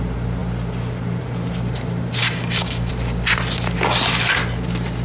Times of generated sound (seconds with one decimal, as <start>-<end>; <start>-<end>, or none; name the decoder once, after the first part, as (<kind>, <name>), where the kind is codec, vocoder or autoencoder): 2.2-2.9 (codec, DAC)